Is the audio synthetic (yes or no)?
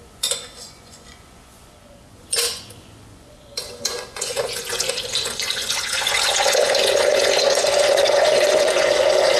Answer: yes